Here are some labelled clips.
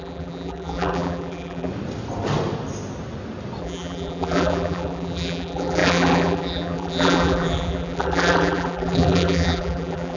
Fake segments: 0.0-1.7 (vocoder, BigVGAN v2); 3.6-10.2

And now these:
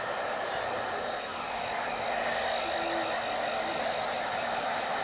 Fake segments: 0.0-1.3 (vocoder, BigVGAN v2); 4.0-5.0

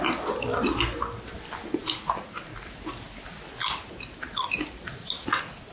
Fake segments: none